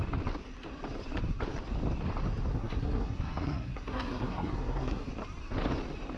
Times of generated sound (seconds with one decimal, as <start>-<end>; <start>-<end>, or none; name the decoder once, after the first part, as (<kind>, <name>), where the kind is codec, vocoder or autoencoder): 2.5-5.1 (codec, SNAC)